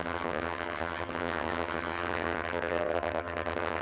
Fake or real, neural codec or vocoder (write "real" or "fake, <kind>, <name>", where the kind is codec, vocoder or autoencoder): fake, vocoder, HiFi-GAN